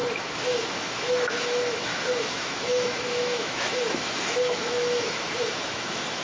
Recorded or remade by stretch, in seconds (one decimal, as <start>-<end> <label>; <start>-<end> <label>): 0.0-6.2 remade